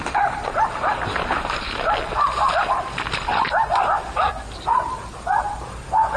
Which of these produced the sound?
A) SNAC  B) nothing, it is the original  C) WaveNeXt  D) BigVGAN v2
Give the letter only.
B